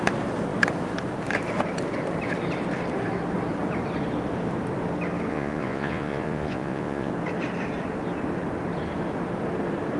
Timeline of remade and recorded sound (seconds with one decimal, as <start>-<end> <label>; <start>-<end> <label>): 0.0-5.3 recorded; 5.3-7.1 remade; 7.1-10.0 recorded